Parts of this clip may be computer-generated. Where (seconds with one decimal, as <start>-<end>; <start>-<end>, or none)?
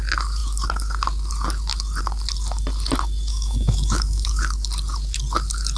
3.3-4.4